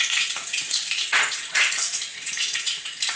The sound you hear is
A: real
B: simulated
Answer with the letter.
B